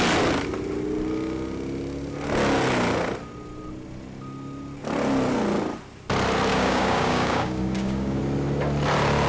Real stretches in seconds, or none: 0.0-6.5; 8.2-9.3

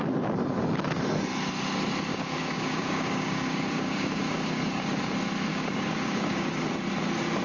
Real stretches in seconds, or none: 0.0-2.1; 5.0-5.5; 6.6-7.4

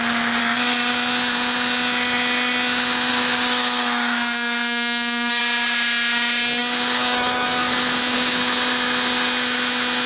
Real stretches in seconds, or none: 0.0-0.4; 0.9-3.1; 5.4-10.1

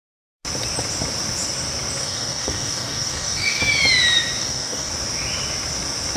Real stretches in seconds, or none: 0.0-2.0; 3.6-4.4; 4.9-6.2

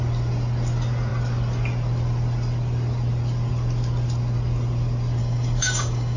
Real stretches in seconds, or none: 0.0-5.2

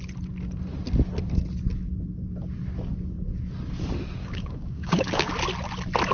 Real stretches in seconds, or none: 0.0-4.2; 5.3-6.1